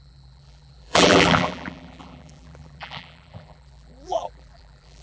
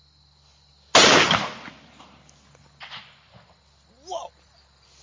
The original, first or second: second